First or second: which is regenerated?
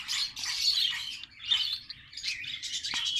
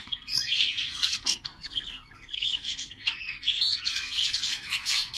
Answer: second